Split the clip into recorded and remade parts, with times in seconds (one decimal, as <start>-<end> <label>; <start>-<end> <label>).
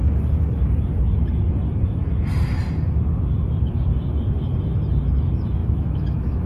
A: 0.0-5.6 recorded; 5.6-6.5 remade